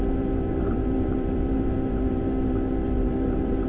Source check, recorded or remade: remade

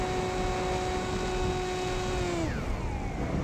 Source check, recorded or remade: recorded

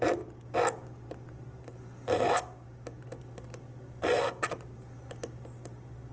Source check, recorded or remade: recorded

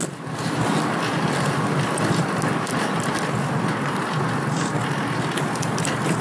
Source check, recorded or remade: recorded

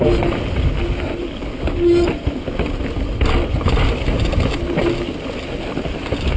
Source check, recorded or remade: recorded